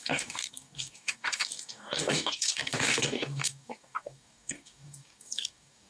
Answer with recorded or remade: remade